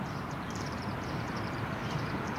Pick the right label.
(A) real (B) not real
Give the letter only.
B